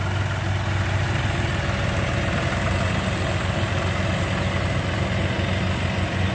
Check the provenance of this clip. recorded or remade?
recorded